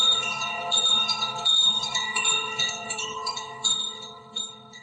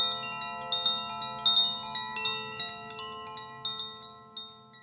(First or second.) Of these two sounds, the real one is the second